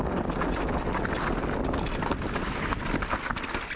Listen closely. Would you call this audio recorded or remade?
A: recorded